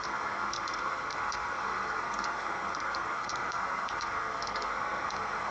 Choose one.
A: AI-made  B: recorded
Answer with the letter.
A